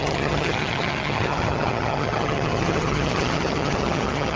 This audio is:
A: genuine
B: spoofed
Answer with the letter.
B